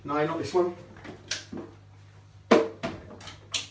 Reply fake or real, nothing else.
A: real